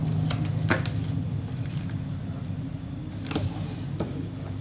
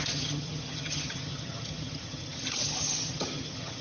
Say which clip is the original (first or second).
first